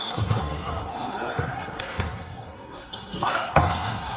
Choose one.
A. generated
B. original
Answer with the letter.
A